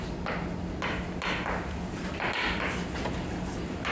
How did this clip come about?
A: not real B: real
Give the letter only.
B